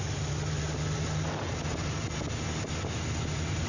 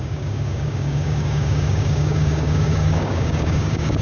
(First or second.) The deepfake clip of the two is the second